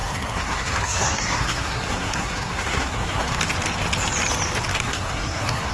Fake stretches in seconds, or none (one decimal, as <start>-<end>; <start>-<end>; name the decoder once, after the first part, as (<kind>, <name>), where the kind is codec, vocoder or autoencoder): 0.0-3.4 (codec, SNAC); 4.7-5.7